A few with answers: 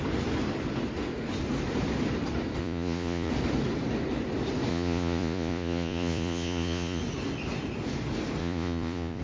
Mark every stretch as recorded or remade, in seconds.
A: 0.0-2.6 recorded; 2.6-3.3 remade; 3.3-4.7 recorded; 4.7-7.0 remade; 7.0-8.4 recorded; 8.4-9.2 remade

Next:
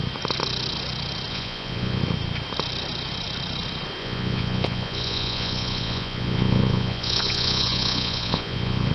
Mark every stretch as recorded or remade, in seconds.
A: 0.0-1.3 recorded; 1.3-2.0 remade; 2.0-4.0 recorded; 4.0-8.9 remade

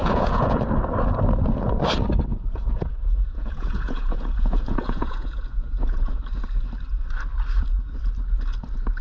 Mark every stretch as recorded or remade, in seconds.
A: 0.0-0.6 remade; 0.6-2.3 recorded; 2.3-6.1 remade; 6.1-9.0 recorded

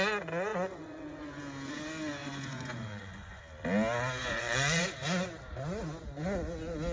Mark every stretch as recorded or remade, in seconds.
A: 0.0-0.5 recorded; 0.5-1.4 remade; 1.4-2.2 recorded; 2.2-3.4 remade; 3.4-4.2 recorded; 4.2-4.8 remade; 4.8-6.9 recorded

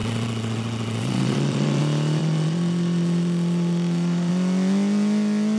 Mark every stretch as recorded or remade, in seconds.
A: 0.0-1.8 remade; 1.8-2.2 recorded; 2.2-4.3 remade; 4.3-5.6 recorded

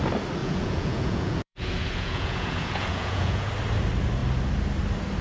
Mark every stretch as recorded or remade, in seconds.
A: 0.0-0.4 recorded; 0.4-3.5 remade; 3.5-5.2 recorded

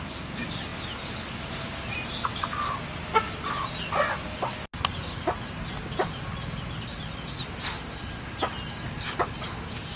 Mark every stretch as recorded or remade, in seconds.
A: 0.0-10.0 recorded

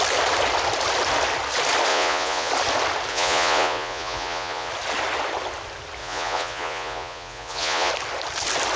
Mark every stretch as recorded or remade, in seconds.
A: 0.0-1.9 recorded; 1.9-2.5 remade; 2.5-3.1 recorded; 3.1-4.7 remade; 4.7-6.0 recorded; 6.0-7.9 remade; 7.9-8.8 recorded